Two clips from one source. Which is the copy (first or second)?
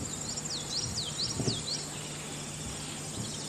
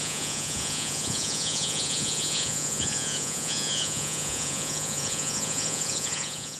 second